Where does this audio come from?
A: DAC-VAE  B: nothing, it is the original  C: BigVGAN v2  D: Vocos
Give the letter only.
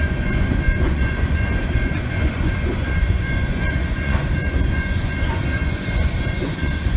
D